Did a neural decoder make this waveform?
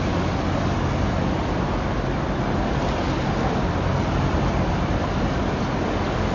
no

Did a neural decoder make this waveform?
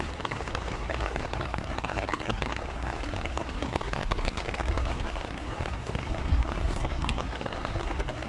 yes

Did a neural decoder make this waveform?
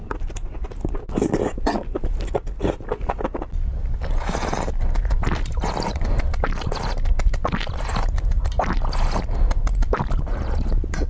no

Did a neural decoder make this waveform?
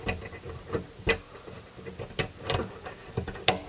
no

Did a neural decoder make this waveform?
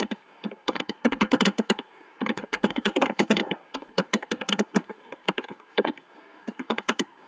yes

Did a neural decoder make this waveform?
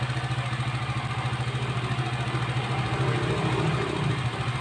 no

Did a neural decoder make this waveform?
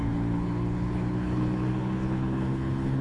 yes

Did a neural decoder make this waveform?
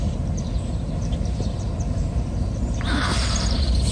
yes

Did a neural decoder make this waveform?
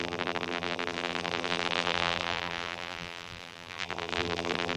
yes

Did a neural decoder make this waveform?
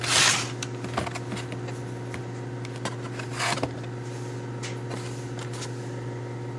no